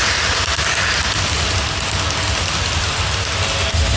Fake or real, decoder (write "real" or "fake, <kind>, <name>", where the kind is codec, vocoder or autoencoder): real